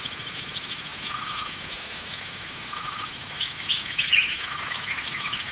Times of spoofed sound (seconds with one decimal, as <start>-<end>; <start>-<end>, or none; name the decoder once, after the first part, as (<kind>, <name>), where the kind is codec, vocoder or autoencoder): 0.0-5.5 (autoencoder, DAC-VAE)